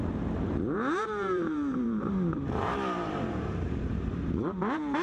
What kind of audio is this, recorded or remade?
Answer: remade